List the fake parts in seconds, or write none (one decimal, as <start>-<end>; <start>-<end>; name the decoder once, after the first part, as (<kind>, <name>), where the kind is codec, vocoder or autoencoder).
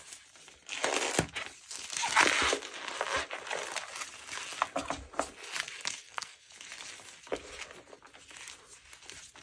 6.0-6.5 (codec, SNAC)